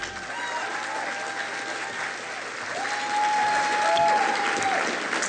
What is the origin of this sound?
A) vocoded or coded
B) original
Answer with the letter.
B